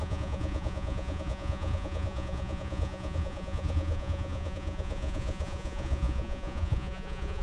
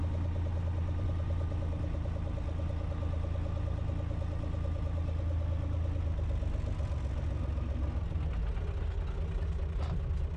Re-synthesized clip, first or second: first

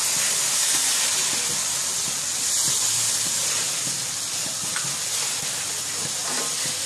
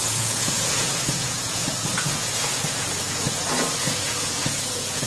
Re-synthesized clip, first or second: second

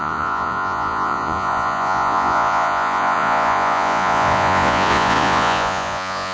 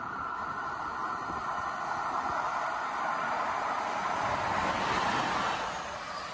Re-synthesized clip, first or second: first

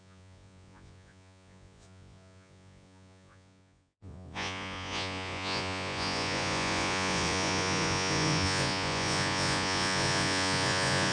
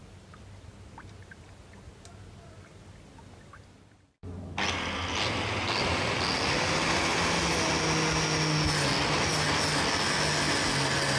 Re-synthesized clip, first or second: first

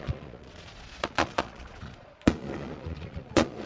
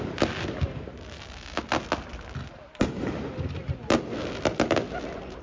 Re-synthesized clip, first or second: first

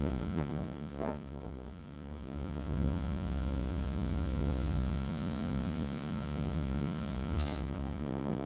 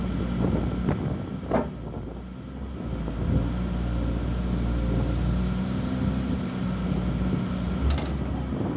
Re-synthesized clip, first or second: first